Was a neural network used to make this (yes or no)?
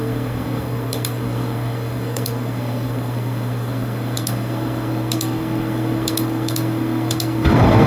yes